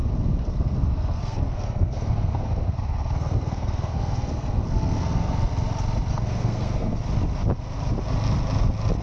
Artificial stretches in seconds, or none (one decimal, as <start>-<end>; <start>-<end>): 0.0-5.5; 6.1-7.0

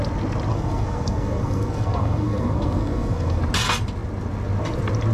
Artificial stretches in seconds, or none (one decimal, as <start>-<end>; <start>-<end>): 0.5-3.4

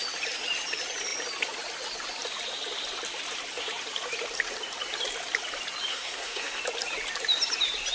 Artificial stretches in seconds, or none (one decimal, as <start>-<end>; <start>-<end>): 5.9-6.6

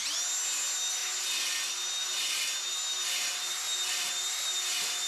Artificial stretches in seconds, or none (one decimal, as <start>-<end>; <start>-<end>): none

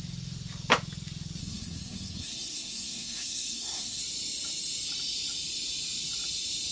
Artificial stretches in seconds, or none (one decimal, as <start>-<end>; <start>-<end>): 1.4-4.0

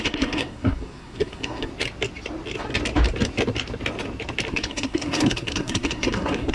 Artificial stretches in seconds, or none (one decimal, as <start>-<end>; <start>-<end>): 0.0-1.7; 4.5-6.5

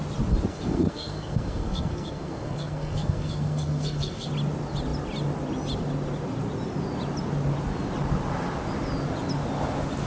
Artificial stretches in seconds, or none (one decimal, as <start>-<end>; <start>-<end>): 0.5-4.3

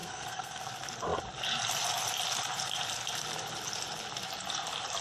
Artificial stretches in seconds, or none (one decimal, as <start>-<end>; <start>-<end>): 0.0-0.7